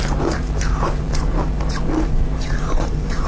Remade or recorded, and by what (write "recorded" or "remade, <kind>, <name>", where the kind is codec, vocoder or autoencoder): remade, vocoder, BigVGAN v2